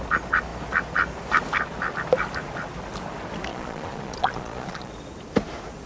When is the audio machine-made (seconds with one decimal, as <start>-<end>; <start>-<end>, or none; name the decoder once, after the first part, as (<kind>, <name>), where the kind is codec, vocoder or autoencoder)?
3.5-4.9 (vocoder, Vocos)